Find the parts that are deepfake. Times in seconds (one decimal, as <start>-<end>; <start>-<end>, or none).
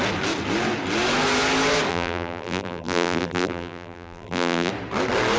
1.9-4.7